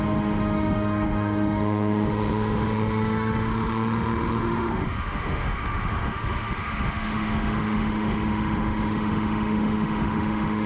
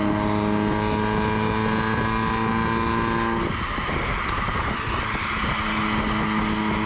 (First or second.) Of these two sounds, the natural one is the second